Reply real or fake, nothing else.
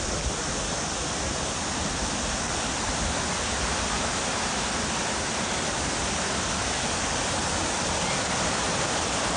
real